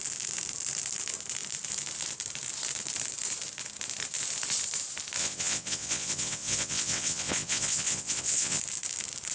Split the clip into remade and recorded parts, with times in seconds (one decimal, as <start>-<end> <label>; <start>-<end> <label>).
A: 0.0-5.2 recorded; 5.2-8.6 remade; 8.6-9.3 recorded